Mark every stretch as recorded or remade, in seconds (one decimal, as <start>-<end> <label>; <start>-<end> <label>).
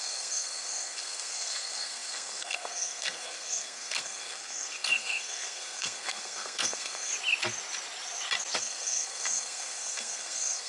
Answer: 0.0-7.1 remade; 7.1-8.6 recorded; 8.6-10.7 remade